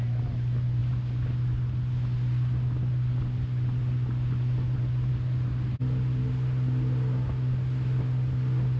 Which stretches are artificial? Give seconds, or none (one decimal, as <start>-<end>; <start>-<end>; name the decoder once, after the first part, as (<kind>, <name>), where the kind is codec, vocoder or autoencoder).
none